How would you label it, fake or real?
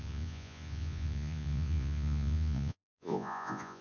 fake